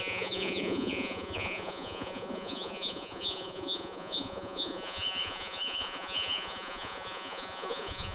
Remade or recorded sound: remade